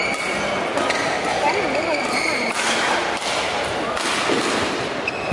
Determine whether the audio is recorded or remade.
recorded